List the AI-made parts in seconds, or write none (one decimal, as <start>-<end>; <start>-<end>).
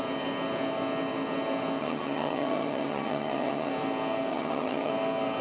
1.8-3.7; 4.3-4.9